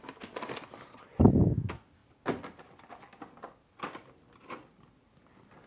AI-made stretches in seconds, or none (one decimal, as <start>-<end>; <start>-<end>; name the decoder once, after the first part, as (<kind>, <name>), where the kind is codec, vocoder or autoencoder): none